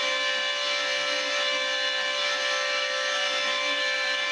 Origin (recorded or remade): recorded